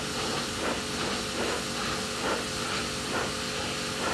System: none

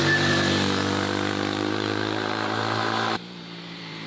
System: vocoder, BigVGAN v2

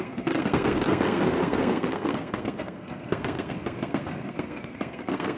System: codec, SNAC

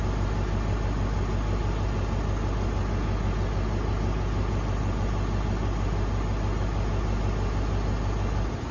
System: none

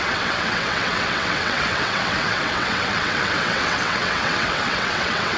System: vocoder, WaveNeXt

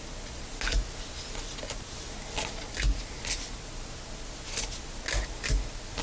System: none